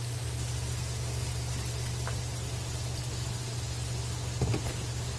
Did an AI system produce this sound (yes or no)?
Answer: no